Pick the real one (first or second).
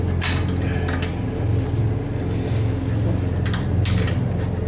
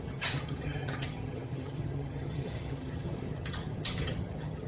first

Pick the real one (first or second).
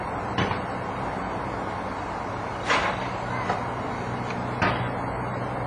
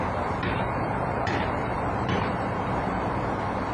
first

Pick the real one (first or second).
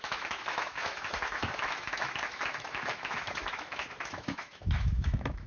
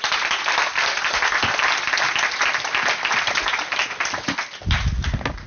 second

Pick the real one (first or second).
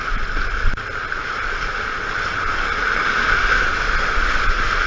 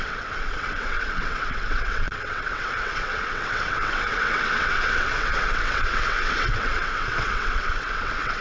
first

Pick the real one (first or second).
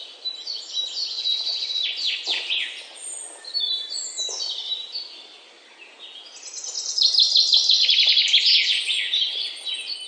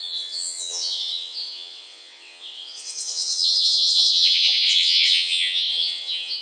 first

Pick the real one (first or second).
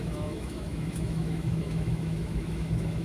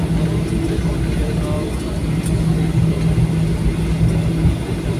second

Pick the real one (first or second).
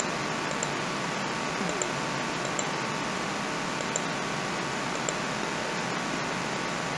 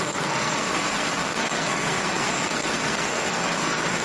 first